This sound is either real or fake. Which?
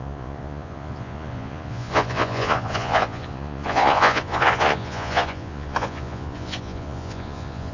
fake